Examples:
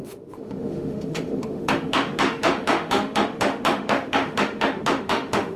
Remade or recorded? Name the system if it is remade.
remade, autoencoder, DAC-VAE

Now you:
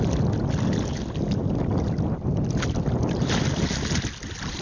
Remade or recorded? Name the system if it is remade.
recorded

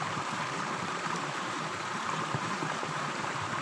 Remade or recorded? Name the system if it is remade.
remade, vocoder, BigVGAN v2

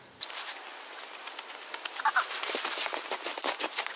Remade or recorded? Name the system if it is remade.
recorded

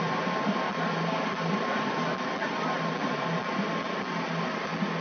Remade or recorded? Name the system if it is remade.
recorded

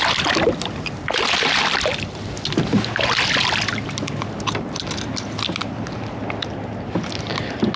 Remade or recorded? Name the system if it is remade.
recorded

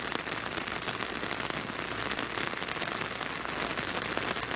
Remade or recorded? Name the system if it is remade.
recorded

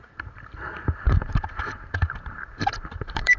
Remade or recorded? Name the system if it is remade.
remade, vocoder, BigVGAN v2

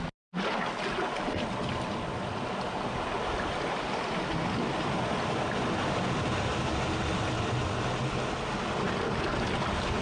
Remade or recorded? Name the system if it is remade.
recorded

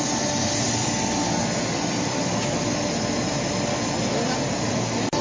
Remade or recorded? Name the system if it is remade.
recorded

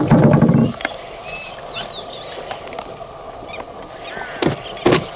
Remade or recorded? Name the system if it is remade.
recorded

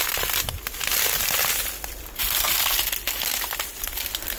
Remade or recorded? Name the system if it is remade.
recorded